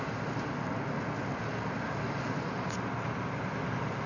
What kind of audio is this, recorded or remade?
recorded